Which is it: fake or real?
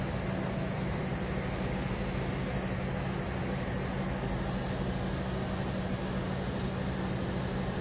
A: real